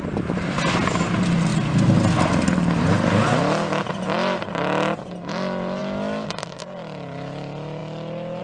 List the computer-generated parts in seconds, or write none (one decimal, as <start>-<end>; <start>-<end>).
none